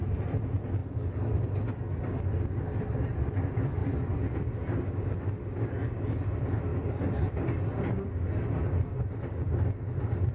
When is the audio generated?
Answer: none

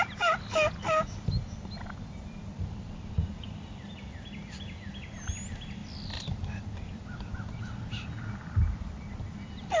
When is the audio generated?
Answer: none

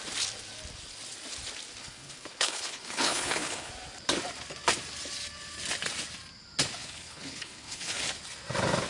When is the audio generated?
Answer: 1.8-3.7; 6.8-8.0